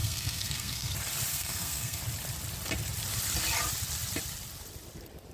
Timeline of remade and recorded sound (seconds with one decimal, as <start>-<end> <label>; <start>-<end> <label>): 0.0-0.9 remade; 0.9-1.3 recorded; 1.3-2.0 remade; 2.0-5.3 recorded